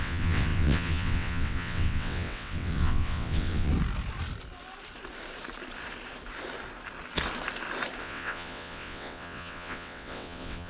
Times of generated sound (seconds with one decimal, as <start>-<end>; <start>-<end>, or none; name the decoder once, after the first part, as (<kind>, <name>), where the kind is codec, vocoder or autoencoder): 0.0-3.7 (vocoder, WaveNeXt); 8.0-10.7

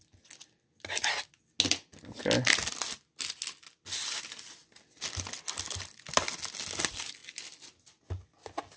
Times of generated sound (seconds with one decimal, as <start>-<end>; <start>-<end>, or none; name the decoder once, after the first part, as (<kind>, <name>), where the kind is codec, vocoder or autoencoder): none

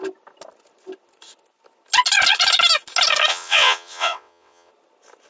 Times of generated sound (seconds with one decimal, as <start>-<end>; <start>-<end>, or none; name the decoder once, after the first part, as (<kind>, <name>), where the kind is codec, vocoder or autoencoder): 3.3-4.7 (vocoder, WaveNeXt)

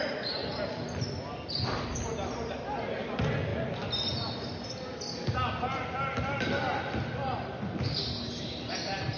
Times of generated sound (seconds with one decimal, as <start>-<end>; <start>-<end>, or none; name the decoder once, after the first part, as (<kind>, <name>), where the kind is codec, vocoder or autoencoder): none

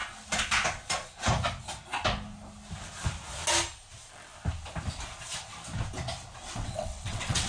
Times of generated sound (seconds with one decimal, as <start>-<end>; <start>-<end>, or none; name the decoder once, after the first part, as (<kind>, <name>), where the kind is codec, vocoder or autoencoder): 6.4-7.5 (vocoder, WaveNeXt)

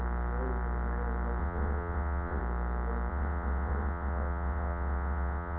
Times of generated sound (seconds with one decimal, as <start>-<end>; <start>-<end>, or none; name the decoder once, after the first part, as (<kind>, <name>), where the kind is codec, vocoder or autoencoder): 1.4-2.4 (vocoder, WaveNeXt); 3.1-5.6

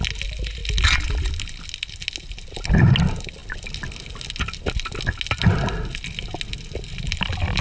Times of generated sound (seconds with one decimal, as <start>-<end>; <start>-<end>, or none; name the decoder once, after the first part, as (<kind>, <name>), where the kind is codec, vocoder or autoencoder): none

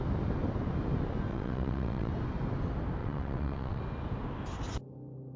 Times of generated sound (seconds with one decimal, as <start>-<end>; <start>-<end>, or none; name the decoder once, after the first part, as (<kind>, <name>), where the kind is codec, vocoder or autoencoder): 1.3-2.1 (vocoder, WaveNeXt); 3.0-3.8